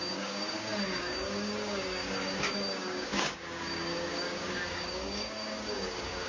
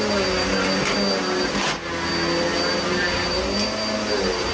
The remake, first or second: first